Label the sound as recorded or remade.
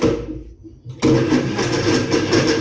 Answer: recorded